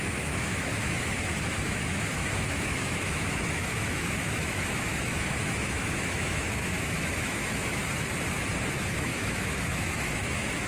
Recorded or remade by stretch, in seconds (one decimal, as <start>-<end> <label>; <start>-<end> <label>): 0.0-7.8 remade; 7.8-8.9 recorded; 8.9-10.7 remade